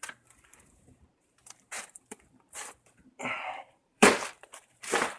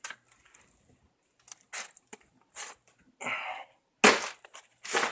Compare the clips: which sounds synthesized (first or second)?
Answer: first